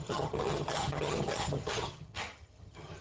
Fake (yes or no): yes